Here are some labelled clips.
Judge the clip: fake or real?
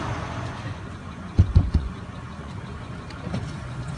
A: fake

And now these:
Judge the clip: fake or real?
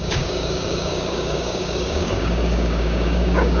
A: fake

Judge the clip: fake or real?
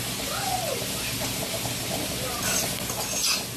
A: real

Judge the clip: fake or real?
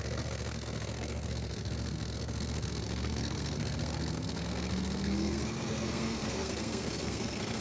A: fake